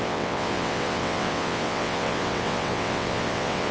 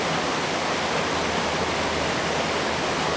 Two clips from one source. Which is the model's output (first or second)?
first